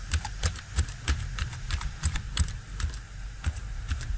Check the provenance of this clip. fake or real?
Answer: fake